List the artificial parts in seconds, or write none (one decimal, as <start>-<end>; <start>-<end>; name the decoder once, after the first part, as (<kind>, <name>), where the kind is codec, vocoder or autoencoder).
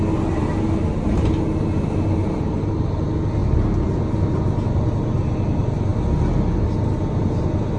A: 2.2-2.7 (vocoder, BigVGAN v2)